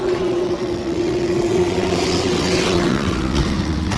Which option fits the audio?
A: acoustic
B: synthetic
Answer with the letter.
B